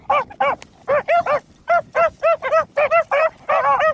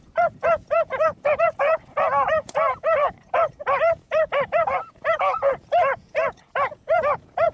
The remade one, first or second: second